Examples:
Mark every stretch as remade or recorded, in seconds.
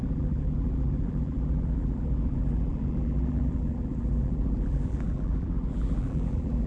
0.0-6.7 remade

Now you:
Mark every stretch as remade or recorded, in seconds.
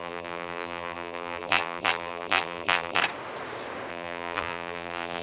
0.0-3.0 remade; 3.0-3.9 recorded; 3.9-5.2 remade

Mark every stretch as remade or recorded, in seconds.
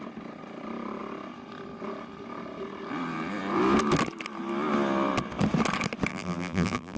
0.0-6.1 recorded; 6.1-7.0 remade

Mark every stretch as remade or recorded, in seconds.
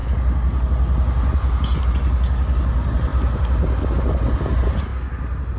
0.0-5.6 recorded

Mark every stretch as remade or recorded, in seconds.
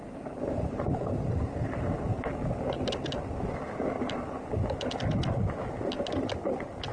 0.0-2.0 remade; 2.0-6.9 recorded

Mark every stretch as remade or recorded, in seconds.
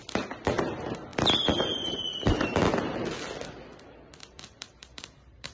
0.0-0.7 recorded; 0.7-1.1 remade; 1.1-4.2 recorded; 4.2-5.5 remade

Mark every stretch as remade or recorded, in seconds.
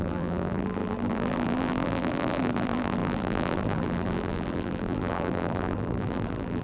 0.0-6.6 remade